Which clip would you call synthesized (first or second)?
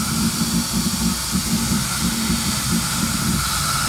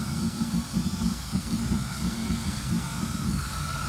second